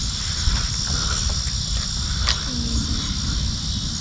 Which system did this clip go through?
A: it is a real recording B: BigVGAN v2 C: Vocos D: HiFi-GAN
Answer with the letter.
A